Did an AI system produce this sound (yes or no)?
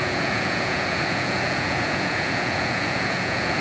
yes